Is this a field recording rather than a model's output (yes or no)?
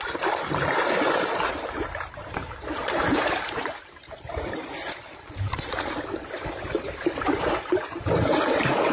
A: no